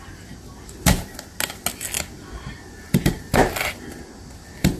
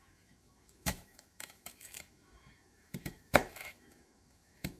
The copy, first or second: second